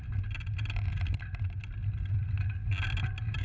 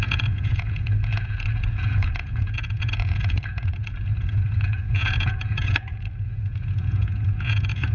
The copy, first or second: second